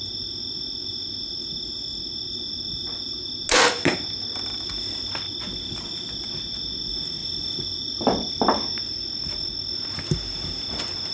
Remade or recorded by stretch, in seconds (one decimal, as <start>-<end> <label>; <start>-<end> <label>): 0.0-7.2 recorded; 7.2-8.3 remade; 8.3-11.1 recorded